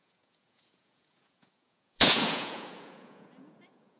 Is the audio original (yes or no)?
no